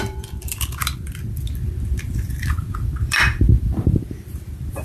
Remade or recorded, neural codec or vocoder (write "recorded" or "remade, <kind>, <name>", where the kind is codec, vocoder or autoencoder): remade, vocoder, BigVGAN v2